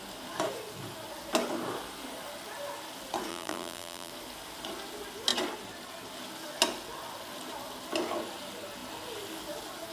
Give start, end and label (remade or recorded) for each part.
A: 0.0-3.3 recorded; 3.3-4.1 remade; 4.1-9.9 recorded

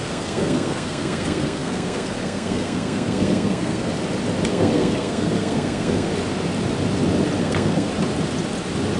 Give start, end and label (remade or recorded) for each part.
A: 0.0-3.9 remade; 3.9-4.5 recorded; 4.5-6.1 remade; 6.1-7.4 recorded; 7.4-7.9 remade; 7.9-9.0 recorded